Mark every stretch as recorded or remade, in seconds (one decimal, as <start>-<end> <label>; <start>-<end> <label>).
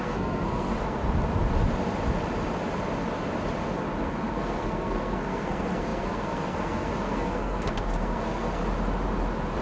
0.0-1.0 remade; 1.0-4.0 recorded; 4.0-8.6 remade; 8.6-9.6 recorded